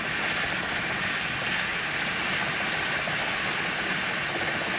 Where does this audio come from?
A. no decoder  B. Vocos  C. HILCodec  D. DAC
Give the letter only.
A